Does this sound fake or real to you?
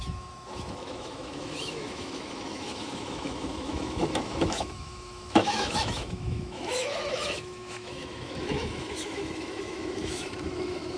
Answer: fake